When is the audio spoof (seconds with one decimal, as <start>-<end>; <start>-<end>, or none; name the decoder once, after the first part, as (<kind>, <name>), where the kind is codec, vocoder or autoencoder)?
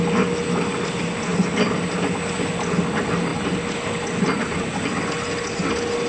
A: none